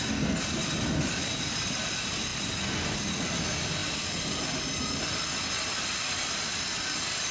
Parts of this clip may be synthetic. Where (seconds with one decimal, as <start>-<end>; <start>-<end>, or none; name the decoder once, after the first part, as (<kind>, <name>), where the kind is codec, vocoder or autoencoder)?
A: none

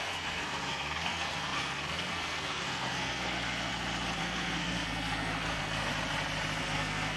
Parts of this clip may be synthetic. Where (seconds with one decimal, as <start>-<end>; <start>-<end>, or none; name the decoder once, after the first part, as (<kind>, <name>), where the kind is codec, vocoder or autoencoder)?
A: 0.0-3.7 (codec, SNAC); 4.2-5.9; 6.6-7.2

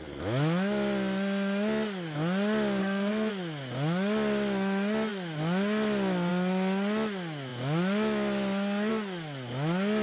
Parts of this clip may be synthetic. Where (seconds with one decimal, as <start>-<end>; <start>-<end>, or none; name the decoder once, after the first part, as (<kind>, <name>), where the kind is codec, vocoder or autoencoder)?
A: 2.8-3.3 (codec, SNAC)